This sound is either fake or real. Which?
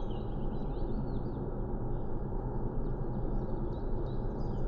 real